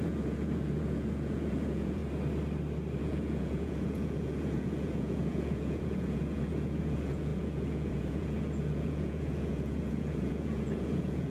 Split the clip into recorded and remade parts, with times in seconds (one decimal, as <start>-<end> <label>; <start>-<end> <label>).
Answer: 0.0-2.0 remade; 2.0-3.0 recorded; 3.0-11.3 remade